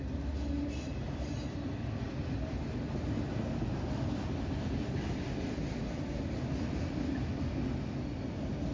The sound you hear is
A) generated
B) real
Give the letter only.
B